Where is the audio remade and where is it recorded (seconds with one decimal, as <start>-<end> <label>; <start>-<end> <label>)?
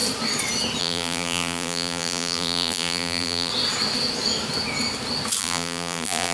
0.0-0.8 recorded; 0.8-3.5 remade; 3.5-5.4 recorded; 5.4-6.3 remade